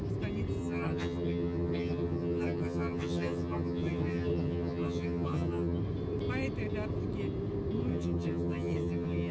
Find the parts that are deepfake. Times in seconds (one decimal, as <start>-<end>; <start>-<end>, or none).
0.6-5.8; 7.9-9.3